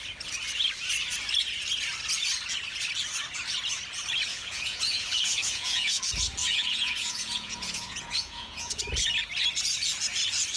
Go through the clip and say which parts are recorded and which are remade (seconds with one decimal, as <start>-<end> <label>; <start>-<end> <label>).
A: 0.0-4.3 recorded; 4.3-6.0 remade; 6.0-6.4 recorded; 6.4-8.8 remade; 8.8-10.6 recorded